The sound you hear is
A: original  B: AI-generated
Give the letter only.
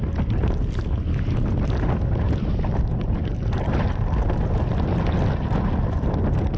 A